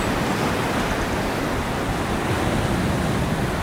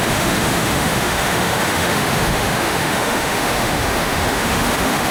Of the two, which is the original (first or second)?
first